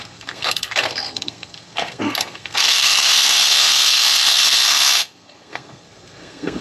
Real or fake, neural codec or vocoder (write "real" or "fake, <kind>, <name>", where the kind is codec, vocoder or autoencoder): fake, codec, SNAC